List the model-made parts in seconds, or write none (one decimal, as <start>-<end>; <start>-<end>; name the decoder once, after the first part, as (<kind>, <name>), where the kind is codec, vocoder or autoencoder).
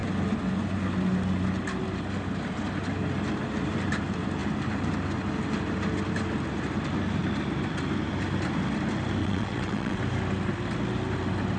9.2-10.0 (vocoder, WaveNeXt)